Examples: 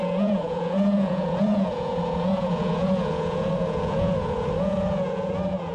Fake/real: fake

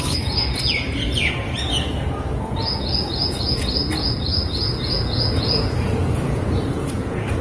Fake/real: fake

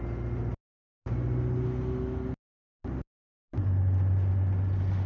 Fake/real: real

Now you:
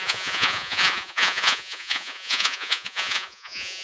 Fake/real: fake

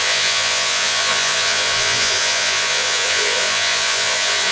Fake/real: fake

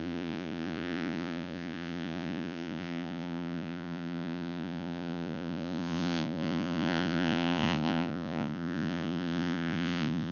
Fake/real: fake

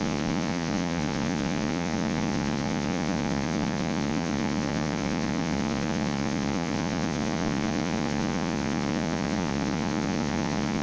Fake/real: fake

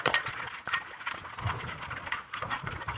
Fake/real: fake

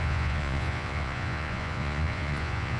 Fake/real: fake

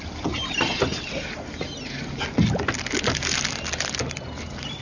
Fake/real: real